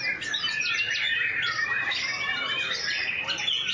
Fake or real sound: real